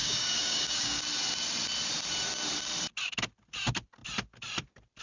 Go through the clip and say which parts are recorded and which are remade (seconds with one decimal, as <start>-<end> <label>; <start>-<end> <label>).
0.0-1.0 remade; 1.0-5.0 recorded